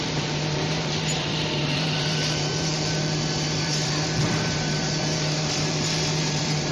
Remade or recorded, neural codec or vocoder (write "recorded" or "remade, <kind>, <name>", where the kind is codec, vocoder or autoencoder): remade, vocoder, BigVGAN v2